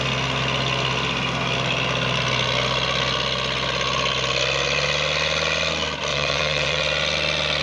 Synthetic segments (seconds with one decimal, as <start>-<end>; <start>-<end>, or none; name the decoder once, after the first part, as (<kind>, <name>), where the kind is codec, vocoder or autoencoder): 6.1-6.8 (vocoder, WaveNeXt)